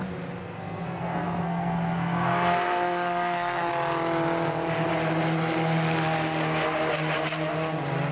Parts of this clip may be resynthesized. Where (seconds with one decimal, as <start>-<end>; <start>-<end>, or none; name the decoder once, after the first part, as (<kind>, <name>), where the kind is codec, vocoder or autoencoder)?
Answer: 0.4-3.7 (codec, SNAC)